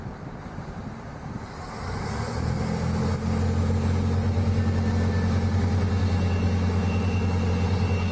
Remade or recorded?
recorded